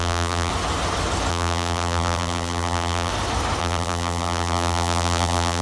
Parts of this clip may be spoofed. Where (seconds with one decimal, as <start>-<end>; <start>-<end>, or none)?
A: 0.0-0.5; 1.3-3.1; 3.6-5.6